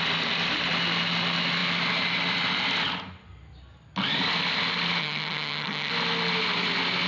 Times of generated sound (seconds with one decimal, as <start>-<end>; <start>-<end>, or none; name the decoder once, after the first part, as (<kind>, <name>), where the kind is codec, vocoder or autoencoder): 5.0-5.9 (vocoder, HiFi-GAN)